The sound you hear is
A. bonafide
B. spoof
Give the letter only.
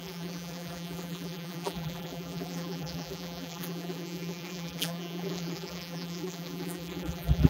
B